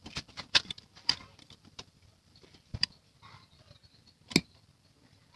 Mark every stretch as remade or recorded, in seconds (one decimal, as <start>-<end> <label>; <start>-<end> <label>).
0.0-3.2 remade; 3.2-5.4 recorded